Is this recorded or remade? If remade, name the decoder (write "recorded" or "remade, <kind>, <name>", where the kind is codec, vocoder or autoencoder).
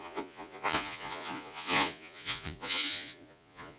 remade, vocoder, Vocos